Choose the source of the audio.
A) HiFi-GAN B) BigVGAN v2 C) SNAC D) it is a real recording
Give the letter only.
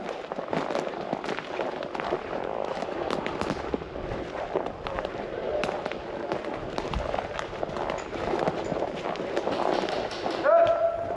D